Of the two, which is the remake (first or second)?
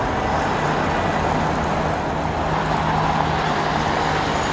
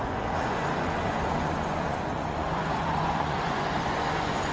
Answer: second